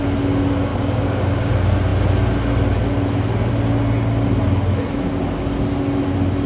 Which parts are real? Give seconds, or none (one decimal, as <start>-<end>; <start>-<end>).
0.0-0.7; 1.5-6.5